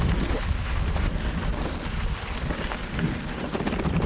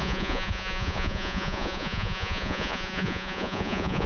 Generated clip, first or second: second